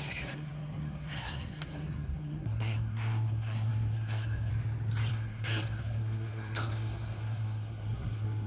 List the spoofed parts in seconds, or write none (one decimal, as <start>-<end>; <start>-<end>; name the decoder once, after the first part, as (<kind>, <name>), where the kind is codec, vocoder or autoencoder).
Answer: 0.0-4.5 (codec, SNAC); 5.1-8.5